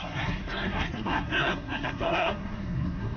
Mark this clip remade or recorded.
remade